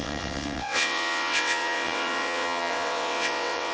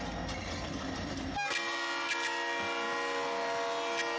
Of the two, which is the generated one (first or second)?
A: first